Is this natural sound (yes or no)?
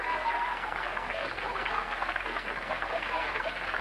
no